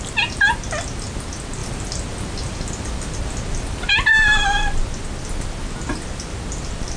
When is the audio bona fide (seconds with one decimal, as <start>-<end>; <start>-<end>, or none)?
0.0-7.0